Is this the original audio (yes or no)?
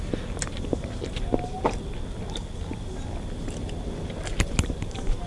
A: yes